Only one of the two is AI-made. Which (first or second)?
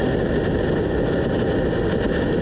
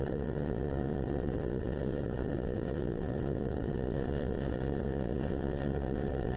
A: second